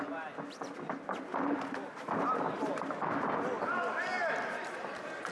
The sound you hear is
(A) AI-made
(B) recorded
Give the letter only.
B